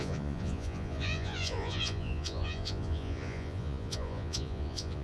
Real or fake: fake